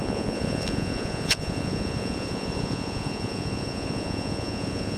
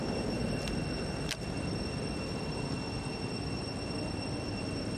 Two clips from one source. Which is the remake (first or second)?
first